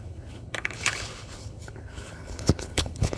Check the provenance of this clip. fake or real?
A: fake